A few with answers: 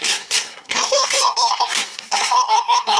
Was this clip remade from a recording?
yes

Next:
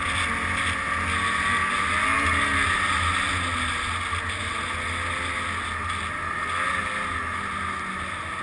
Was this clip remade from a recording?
no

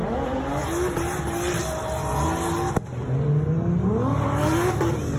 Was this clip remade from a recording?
no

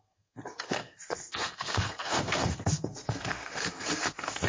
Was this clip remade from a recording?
yes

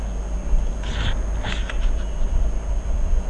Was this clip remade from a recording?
no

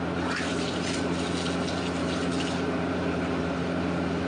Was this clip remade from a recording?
yes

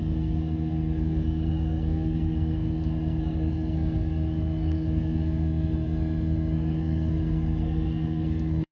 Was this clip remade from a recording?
yes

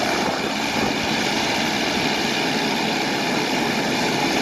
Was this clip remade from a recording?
yes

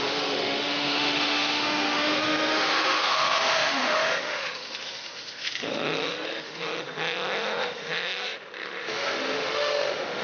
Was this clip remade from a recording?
yes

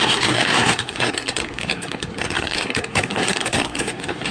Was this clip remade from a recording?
yes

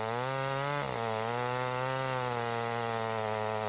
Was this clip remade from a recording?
no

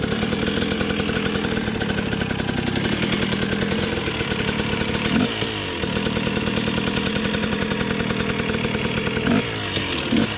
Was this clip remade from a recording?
no